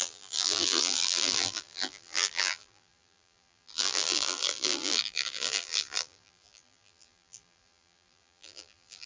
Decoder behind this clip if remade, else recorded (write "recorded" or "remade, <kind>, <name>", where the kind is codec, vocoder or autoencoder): remade, vocoder, BigVGAN v2